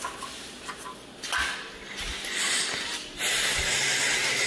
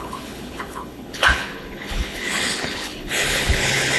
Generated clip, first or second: second